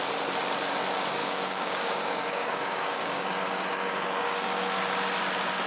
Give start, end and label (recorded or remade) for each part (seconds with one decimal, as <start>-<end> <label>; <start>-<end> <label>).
0.0-1.2 recorded; 1.2-4.6 remade; 4.6-5.7 recorded